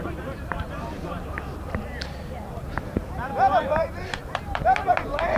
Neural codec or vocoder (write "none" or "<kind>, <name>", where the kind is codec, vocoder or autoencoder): vocoder, BigVGAN v2